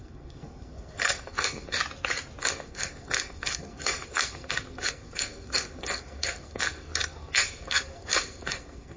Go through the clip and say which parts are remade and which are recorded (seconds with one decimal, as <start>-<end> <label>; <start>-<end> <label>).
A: 0.0-1.8 remade; 1.8-2.4 recorded; 2.4-9.0 remade